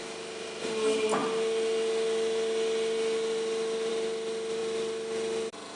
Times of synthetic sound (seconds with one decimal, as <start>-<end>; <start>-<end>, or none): none